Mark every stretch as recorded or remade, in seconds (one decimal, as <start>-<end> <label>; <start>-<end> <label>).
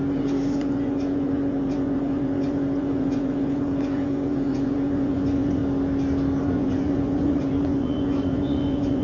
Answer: 0.0-5.6 remade; 5.6-6.4 recorded; 6.4-9.0 remade